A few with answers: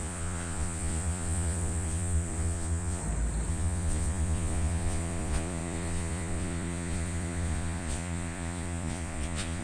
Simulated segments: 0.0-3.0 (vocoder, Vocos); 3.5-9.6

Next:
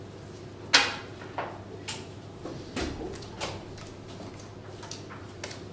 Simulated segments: none